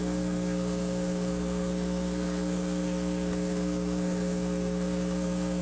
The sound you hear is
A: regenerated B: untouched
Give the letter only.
A